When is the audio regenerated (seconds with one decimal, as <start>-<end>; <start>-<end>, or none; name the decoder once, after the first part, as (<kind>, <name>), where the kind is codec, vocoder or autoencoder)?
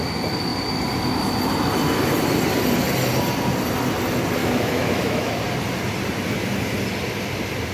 4.4-5.4 (autoencoder, DAC-VAE)